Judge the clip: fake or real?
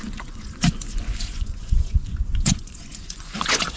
fake